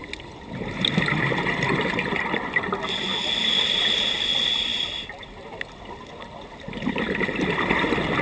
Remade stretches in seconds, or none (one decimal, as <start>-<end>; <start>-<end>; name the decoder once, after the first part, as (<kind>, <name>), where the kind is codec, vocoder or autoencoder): none